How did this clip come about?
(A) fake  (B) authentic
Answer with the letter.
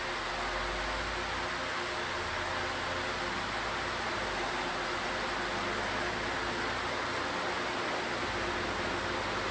B